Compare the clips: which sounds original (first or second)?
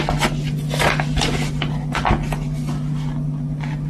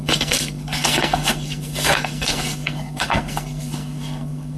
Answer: first